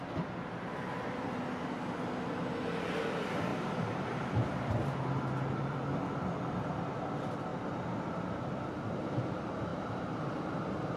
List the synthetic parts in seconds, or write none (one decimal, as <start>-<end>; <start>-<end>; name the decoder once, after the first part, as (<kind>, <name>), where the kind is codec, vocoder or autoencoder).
3.5-5.8 (vocoder, BigVGAN v2); 9.7-10.2